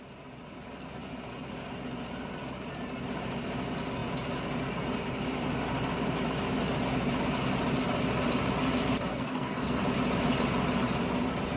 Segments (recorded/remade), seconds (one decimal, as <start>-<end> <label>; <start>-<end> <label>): 0.0-9.1 recorded; 9.1-9.8 remade; 9.8-11.6 recorded